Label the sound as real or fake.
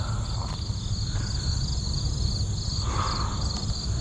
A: real